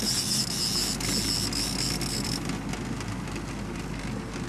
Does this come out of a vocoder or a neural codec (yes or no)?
no